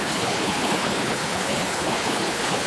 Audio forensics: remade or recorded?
remade